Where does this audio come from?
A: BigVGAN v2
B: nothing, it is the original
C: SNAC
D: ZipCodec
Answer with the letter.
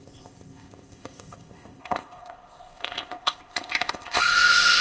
D